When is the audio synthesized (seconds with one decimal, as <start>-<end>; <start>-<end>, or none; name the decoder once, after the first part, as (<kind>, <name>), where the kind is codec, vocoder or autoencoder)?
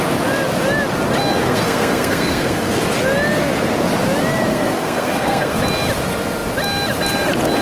1.4-2.8 (codec, SNAC); 4.5-5.6